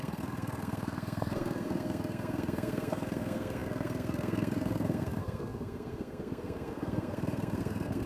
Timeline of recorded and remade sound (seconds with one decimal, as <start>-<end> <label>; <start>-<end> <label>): 0.0-8.1 remade